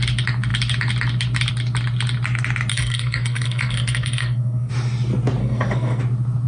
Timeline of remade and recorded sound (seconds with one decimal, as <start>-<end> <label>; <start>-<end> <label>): 0.0-2.7 recorded; 2.7-4.7 remade; 4.7-5.4 recorded; 5.4-6.0 remade; 6.0-6.5 recorded